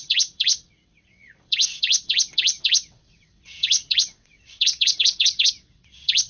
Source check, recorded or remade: remade